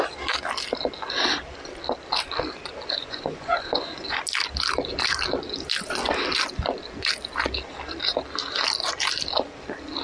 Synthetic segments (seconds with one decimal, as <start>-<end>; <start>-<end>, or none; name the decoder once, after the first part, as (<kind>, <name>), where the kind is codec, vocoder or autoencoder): 3.0-4.2 (vocoder, Vocos)

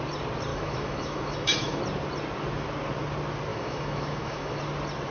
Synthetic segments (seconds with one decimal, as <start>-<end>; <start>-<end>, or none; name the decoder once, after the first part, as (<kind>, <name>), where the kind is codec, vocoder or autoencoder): 0.5-1.8 (autoencoder, DAC-VAE); 3.5-4.6